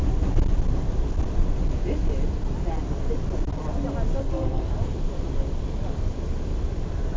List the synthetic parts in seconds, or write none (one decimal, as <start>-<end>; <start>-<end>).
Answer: 4.2-4.7